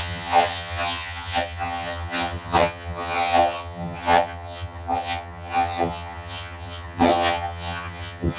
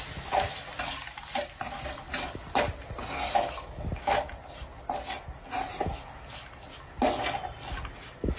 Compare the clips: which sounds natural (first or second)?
second